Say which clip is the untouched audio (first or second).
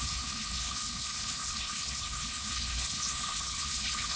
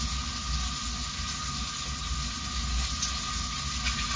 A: second